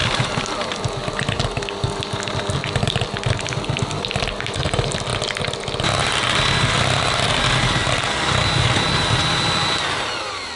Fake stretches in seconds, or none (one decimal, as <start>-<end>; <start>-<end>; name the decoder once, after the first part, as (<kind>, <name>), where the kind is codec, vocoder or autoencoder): 0.0-0.5 (vocoder, BigVGAN v2); 1.0-1.6